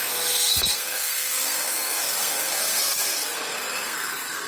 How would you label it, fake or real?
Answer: fake